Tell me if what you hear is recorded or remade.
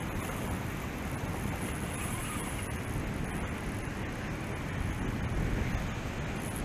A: recorded